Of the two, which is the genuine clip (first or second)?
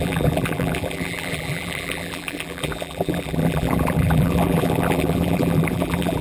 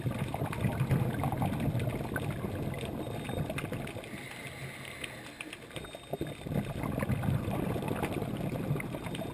second